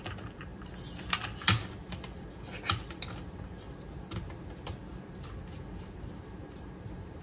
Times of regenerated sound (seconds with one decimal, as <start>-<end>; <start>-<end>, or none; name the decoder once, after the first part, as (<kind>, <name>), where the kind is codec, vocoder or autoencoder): none